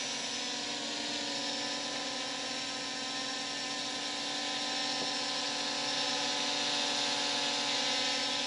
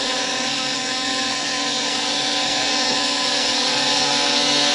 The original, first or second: first